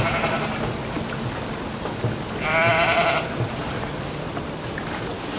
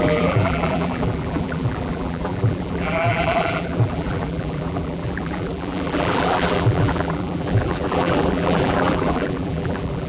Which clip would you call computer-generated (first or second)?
second